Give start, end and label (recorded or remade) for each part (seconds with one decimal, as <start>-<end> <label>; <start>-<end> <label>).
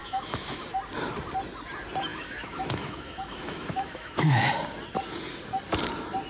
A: 0.0-0.6 remade; 0.6-2.1 recorded; 2.1-4.5 remade; 4.5-6.3 recorded